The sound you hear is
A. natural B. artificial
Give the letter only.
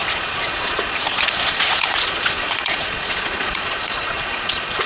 B